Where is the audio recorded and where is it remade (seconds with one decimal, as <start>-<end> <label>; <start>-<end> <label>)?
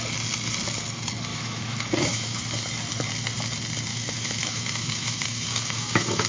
0.0-1.3 recorded; 1.3-2.4 remade; 2.4-3.9 recorded; 3.9-6.3 remade